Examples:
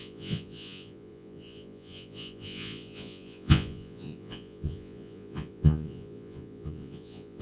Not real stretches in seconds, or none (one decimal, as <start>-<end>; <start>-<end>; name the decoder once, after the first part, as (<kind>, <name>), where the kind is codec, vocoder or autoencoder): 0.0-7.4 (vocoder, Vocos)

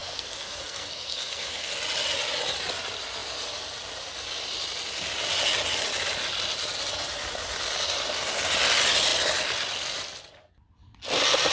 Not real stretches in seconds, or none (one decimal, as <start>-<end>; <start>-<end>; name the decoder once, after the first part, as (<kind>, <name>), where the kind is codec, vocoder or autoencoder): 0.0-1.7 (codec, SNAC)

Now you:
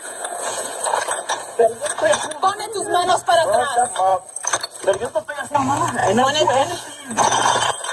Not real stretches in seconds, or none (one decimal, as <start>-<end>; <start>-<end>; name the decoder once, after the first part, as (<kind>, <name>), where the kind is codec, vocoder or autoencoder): 0.0-4.1 (vocoder, Vocos); 5.5-6.0; 6.5-7.9

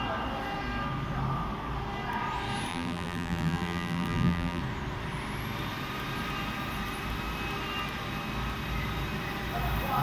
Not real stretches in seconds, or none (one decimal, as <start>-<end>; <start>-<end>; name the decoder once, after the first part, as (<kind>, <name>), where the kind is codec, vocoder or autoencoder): 2.7-4.6 (vocoder, BigVGAN v2)

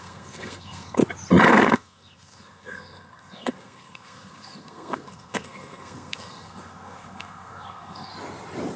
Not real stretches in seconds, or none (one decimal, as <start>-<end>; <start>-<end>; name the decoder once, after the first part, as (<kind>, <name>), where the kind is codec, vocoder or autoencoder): 0.0-1.0 (codec, SNAC); 1.5-8.1

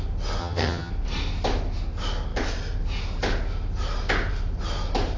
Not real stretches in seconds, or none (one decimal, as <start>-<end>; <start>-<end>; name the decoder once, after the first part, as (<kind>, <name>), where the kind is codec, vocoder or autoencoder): 0.4-0.9 (vocoder, HiFi-GAN)

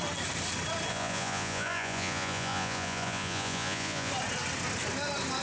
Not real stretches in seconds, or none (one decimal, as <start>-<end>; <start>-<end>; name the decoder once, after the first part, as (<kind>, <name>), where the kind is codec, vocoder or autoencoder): 0.9-4.1 (vocoder, Vocos)